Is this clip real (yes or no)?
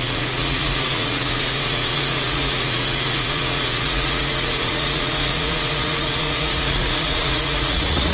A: no